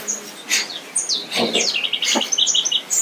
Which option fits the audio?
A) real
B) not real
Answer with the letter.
A